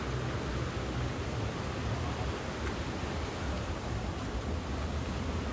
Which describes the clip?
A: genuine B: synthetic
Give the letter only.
A